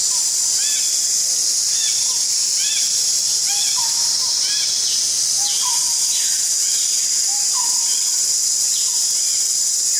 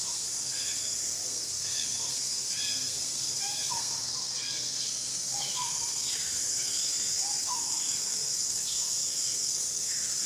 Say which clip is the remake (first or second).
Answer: second